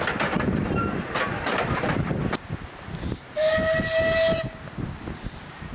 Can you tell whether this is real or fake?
real